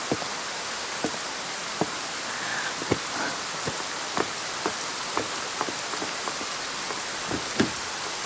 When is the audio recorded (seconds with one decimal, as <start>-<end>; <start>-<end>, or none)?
0.0-0.4; 0.9-8.3